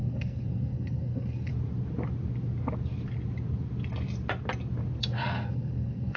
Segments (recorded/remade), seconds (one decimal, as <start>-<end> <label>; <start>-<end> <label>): 0.0-1.5 remade; 1.5-5.0 recorded; 5.0-6.2 remade